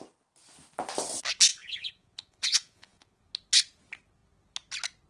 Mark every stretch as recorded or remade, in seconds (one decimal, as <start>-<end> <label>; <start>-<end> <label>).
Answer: 0.0-1.5 recorded; 1.5-3.2 remade; 3.2-5.1 recorded